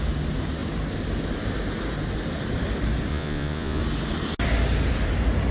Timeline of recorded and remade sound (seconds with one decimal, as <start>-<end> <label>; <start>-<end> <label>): 0.0-3.1 recorded; 3.1-3.8 remade; 3.8-5.5 recorded